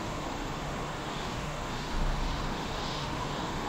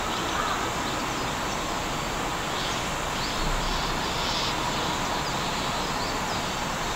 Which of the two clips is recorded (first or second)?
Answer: second